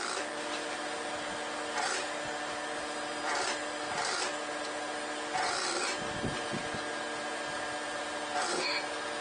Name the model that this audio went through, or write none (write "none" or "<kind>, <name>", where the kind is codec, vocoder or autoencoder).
none